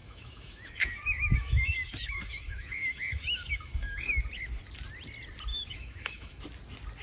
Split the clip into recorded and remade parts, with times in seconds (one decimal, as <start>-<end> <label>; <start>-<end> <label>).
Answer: 0.0-4.2 remade; 4.2-5.5 recorded; 5.5-6.4 remade; 6.4-7.0 recorded